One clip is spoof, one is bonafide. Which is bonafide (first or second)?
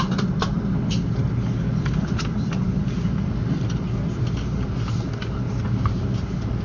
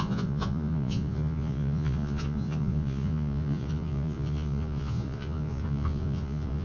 first